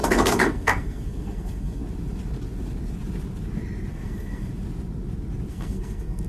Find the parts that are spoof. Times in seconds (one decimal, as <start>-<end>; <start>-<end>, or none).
0.0-1.8; 3.9-4.5; 5.5-6.3